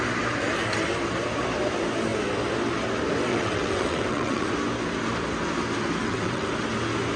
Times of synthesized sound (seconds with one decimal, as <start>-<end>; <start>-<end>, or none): 3.3-4.5; 6.0-6.5